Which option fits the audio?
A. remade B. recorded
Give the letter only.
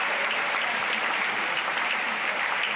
B